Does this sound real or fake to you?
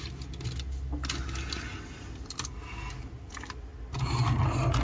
real